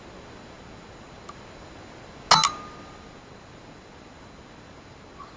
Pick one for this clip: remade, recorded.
recorded